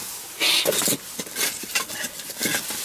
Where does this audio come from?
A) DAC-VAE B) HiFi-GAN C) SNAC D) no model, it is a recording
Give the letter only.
D